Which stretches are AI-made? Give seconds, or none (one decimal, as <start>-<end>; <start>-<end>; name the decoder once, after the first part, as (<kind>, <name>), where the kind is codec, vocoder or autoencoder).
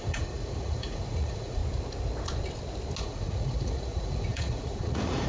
0.0-1.6 (vocoder, Vocos); 3.0-5.3